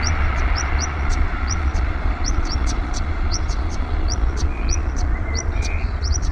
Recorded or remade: remade